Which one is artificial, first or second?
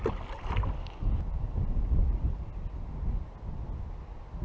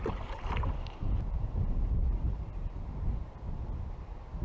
second